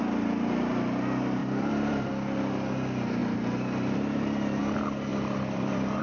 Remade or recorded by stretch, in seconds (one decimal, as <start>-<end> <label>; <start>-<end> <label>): 0.0-1.4 recorded; 1.4-2.1 remade; 2.1-3.2 recorded; 3.2-4.6 remade; 4.6-5.1 recorded; 5.1-6.0 remade

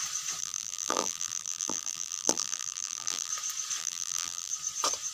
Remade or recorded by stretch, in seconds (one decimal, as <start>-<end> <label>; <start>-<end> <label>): 0.0-0.4 recorded; 0.4-3.3 remade; 3.3-3.8 recorded; 3.8-4.5 remade; 4.5-5.1 recorded

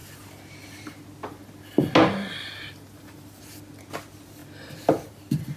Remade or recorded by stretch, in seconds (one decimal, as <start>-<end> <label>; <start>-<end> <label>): 0.0-5.6 recorded